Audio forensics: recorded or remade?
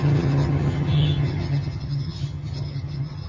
remade